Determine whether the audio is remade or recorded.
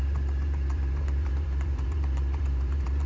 remade